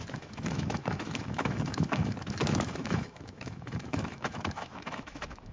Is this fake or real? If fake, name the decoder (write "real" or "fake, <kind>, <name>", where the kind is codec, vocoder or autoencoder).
fake, autoencoder, DAC-VAE